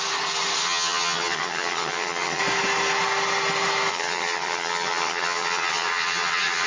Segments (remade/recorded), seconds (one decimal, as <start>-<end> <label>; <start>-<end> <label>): 0.0-0.6 recorded; 0.6-2.4 remade; 2.4-3.9 recorded; 3.9-6.7 remade

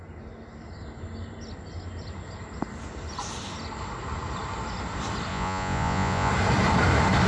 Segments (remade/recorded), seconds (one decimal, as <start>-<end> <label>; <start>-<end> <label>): 0.0-5.3 recorded; 5.3-6.3 remade; 6.3-7.3 recorded

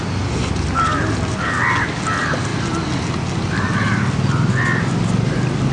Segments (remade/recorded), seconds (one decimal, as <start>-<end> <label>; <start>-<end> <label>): 0.0-5.7 recorded

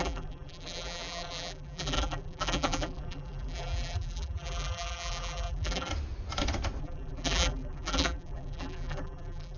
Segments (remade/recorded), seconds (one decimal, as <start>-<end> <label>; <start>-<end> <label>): 0.0-5.9 remade; 5.9-6.8 recorded; 6.8-9.6 remade

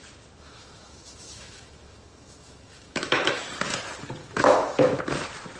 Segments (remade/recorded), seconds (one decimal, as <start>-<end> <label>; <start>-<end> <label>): 0.0-3.4 remade; 3.4-4.2 recorded; 4.2-5.0 remade; 5.0-5.6 recorded

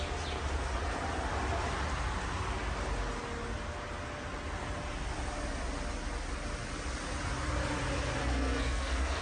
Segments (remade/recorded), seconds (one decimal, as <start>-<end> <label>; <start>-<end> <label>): 0.0-8.2 recorded; 8.2-9.2 remade